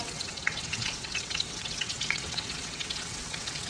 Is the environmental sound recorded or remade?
remade